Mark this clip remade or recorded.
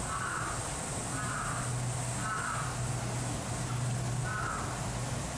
recorded